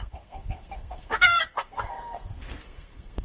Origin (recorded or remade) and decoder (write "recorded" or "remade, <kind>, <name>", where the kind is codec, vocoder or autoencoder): remade, codec, SNAC